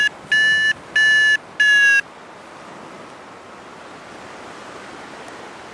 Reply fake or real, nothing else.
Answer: real